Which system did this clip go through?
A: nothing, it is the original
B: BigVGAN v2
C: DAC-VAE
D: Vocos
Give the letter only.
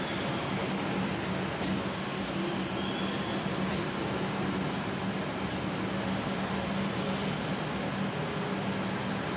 A